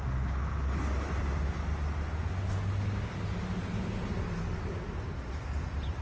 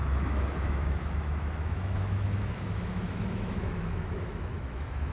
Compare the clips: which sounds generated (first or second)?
second